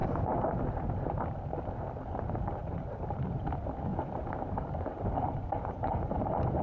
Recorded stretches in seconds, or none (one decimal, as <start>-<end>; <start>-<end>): 0.0-2.6; 3.4-3.9